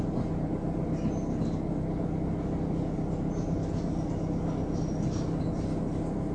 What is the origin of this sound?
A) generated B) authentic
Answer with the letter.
B